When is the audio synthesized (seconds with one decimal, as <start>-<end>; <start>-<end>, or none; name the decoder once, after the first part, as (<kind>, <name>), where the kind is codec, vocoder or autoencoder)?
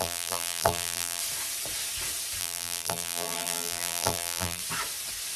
0.0-1.2 (vocoder, BigVGAN v2); 2.4-4.6